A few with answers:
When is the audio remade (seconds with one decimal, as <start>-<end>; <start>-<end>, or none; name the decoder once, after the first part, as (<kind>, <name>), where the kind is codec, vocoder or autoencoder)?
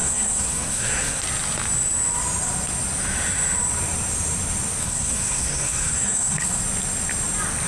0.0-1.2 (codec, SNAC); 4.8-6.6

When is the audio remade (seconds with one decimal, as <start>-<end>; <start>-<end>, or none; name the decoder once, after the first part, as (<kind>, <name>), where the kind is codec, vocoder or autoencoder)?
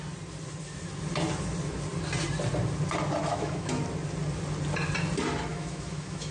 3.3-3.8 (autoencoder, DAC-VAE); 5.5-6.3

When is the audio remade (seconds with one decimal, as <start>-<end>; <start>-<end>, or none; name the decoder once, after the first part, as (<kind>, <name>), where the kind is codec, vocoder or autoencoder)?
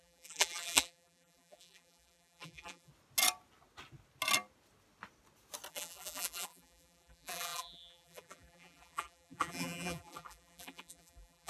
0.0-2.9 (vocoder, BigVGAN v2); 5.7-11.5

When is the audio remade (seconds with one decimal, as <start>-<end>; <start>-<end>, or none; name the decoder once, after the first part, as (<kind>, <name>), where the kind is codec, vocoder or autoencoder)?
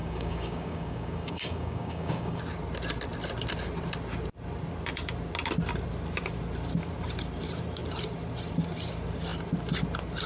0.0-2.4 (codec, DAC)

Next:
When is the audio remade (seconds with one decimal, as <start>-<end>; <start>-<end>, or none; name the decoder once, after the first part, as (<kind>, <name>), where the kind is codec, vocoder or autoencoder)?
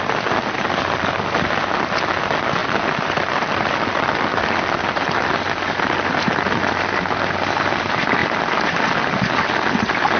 none